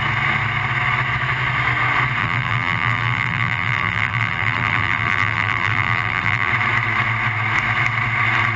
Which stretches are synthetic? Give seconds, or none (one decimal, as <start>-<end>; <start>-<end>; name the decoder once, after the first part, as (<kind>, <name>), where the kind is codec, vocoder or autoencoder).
2.2-6.5 (vocoder, BigVGAN v2)